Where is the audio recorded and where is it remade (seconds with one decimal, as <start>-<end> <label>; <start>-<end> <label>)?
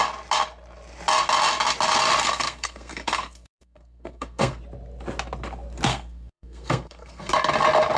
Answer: 0.0-2.2 recorded; 2.2-4.6 remade; 4.6-5.9 recorded; 5.9-7.3 remade; 7.3-8.0 recorded